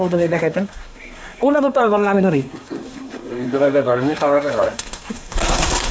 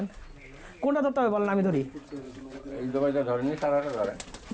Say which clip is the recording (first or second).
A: second